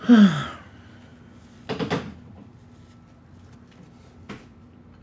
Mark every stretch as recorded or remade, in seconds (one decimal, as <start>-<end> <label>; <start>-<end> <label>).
0.0-5.0 recorded